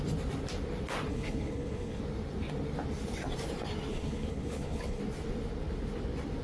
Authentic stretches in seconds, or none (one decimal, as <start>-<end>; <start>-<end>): 0.0-1.1; 2.0-3.9; 5.0-6.4